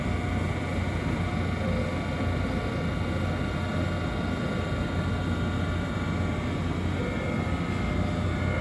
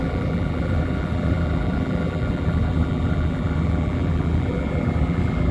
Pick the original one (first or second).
first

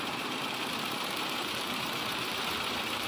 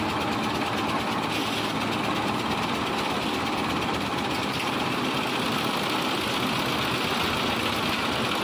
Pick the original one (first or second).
second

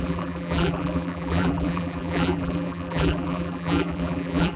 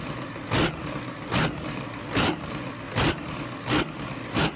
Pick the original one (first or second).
second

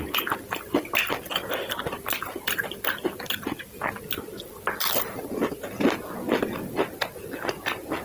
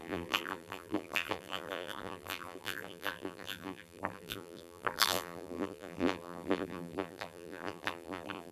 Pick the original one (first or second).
first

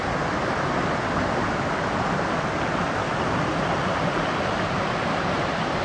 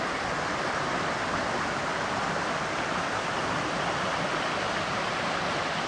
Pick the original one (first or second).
first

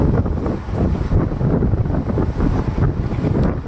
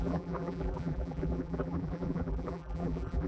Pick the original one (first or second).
first